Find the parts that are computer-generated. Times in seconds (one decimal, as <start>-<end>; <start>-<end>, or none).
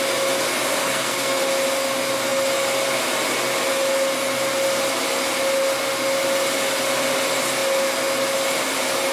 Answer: 0.8-1.4